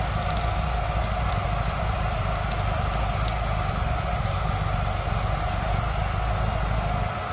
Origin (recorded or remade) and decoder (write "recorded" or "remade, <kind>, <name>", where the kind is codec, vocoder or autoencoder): recorded